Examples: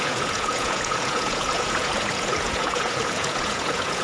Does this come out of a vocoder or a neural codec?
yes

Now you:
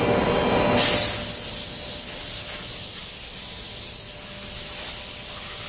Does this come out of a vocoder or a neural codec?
no